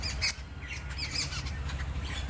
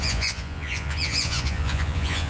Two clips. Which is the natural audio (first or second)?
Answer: first